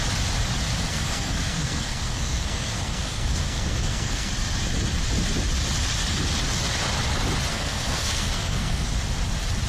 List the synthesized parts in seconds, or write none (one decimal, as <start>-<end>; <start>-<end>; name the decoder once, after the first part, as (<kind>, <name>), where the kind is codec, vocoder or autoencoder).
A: 0.9-4.3 (codec, SNAC); 7.5-8.9